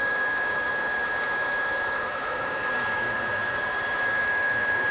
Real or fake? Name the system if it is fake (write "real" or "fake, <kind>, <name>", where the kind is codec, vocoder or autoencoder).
fake, autoencoder, DAC-VAE